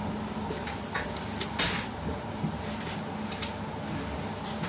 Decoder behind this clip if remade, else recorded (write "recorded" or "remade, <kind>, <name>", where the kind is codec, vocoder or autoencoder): recorded